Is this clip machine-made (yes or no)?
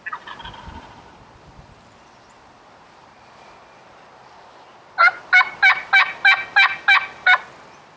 no